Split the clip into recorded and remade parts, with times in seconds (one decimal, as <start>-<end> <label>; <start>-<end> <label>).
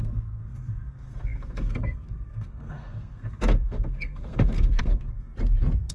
0.0-5.3 remade; 5.3-5.9 recorded